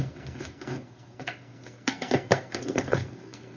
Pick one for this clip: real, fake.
fake